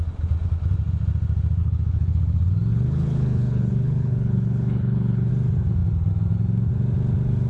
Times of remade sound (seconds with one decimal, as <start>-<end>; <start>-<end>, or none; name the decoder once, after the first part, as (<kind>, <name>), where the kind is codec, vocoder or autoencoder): 1.6-2.2 (codec, HILCodec); 2.7-5.3